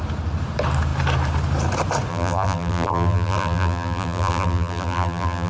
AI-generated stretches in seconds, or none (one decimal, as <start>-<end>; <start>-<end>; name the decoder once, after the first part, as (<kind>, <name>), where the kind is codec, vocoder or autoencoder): 2.1-5.5 (vocoder, BigVGAN v2)